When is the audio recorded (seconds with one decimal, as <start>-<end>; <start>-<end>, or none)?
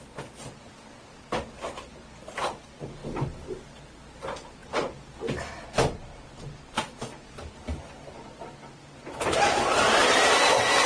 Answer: 0.0-6.1; 8.4-10.9